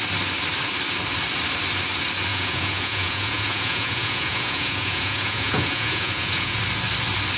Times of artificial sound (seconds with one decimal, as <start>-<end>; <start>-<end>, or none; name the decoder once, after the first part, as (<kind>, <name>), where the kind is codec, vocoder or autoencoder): 2.3-6.6 (vocoder, Vocos)